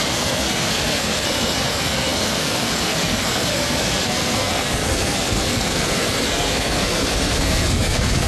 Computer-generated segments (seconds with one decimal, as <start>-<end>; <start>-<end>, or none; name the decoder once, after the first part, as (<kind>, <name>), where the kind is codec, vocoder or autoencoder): 0.0-8.3 (codec, SNAC)